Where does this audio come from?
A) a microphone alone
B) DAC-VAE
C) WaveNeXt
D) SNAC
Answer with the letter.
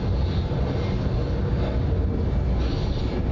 A